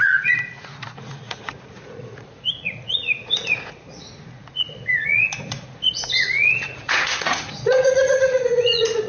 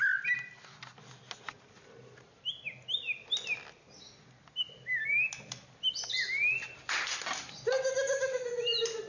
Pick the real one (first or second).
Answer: second